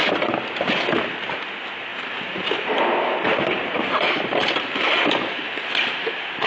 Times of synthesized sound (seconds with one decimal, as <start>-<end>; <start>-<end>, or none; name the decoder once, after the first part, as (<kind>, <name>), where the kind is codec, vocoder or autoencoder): 1.9-5.7 (vocoder, BigVGAN v2)